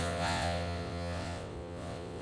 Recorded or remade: remade